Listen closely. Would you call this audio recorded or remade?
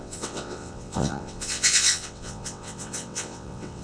remade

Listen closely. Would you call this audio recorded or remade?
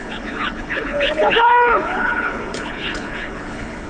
remade